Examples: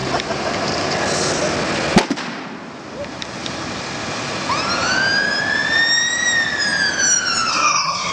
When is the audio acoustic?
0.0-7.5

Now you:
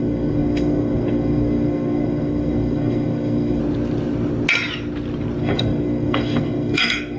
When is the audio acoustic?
3.6-5.4

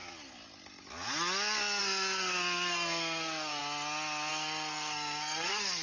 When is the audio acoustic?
0.0-1.8; 3.6-4.3